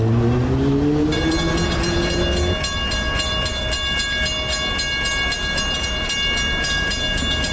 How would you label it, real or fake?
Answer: real